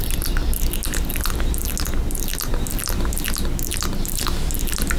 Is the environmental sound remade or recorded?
recorded